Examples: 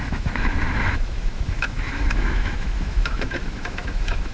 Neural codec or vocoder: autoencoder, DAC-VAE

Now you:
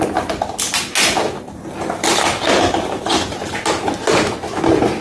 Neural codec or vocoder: none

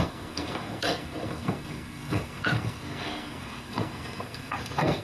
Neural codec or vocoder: codec, SNAC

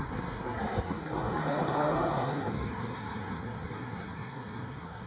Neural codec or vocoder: codec, SNAC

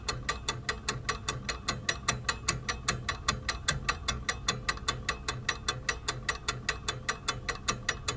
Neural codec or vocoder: none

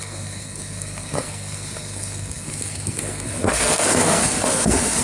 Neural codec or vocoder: codec, SNAC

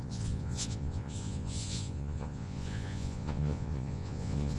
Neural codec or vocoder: vocoder, Vocos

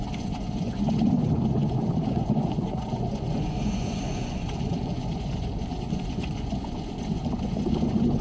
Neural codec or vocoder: vocoder, Vocos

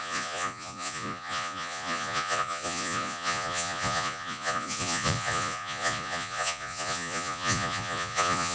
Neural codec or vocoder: vocoder, Vocos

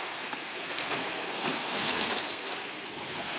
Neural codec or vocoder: codec, SNAC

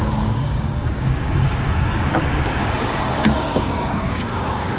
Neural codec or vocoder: codec, DAC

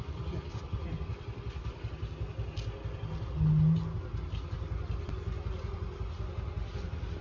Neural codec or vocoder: none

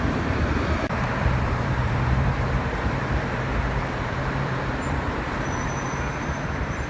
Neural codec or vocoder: vocoder, BigVGAN v2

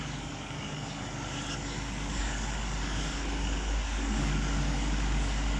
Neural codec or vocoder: codec, DAC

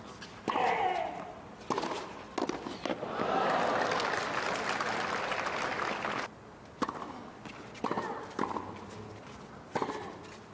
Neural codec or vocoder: none